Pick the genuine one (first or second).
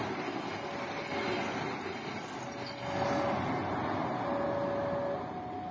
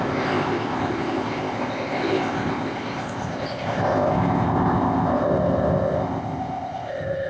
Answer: first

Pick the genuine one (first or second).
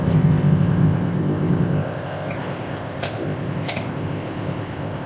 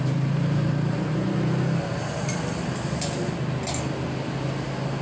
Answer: second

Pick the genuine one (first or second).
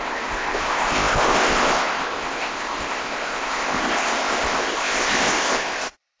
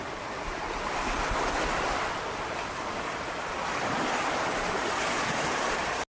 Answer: second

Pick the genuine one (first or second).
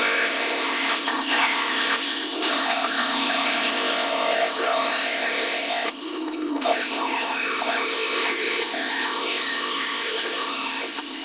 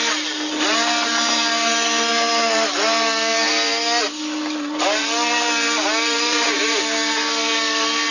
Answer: second